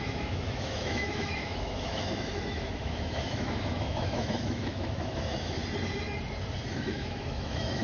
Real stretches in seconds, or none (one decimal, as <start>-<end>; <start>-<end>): 5.6-6.7